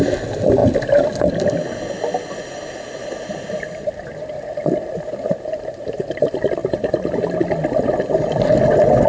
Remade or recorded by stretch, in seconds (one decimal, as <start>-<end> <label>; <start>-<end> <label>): 0.0-5.3 recorded; 5.3-6.0 remade; 6.0-6.6 recorded; 6.6-7.2 remade; 7.2-9.1 recorded